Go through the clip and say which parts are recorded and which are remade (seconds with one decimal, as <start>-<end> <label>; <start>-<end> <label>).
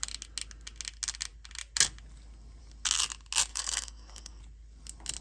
0.0-3.5 recorded; 3.5-4.4 remade; 4.4-5.2 recorded